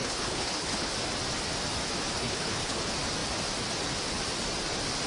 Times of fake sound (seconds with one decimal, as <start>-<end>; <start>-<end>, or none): 0.0-0.9; 2.2-2.8